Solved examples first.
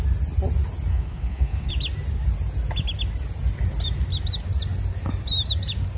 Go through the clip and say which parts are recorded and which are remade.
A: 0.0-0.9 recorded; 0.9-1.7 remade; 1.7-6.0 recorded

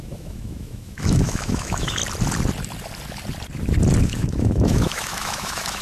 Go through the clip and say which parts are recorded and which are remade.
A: 0.0-2.0 remade; 2.0-4.0 recorded; 4.0-5.8 remade

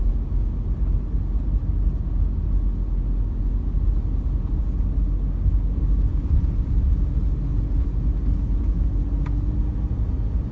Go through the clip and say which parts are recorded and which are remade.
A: 0.0-10.5 recorded

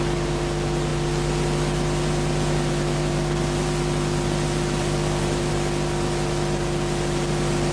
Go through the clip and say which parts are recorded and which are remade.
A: 0.0-7.7 recorded

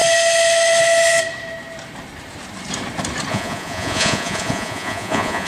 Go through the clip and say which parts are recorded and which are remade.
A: 0.0-3.3 recorded; 3.3-5.5 remade

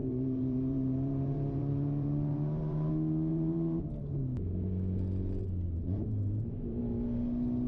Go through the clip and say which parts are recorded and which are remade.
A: 0.0-2.9 remade; 2.9-3.3 recorded; 3.3-4.2 remade; 4.2-5.8 recorded; 5.8-6.8 remade; 6.8-7.7 recorded

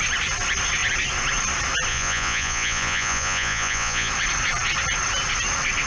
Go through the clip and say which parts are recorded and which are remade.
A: 0.0-1.9 recorded; 1.9-4.1 remade; 4.1-5.9 recorded

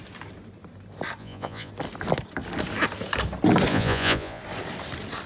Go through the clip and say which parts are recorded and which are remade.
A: 0.0-1.2 recorded; 1.2-1.7 remade; 1.7-3.7 recorded; 3.7-4.4 remade; 4.4-5.3 recorded